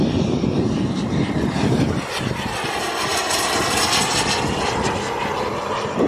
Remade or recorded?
recorded